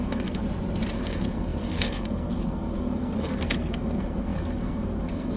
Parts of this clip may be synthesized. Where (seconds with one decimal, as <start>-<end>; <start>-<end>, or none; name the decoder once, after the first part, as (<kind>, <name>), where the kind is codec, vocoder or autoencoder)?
0.0-0.4 (codec, SNAC); 0.9-5.4